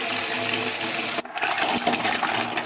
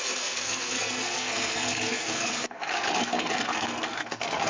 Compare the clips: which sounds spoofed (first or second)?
second